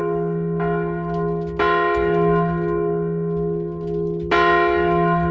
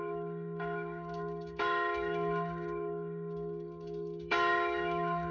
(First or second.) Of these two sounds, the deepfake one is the second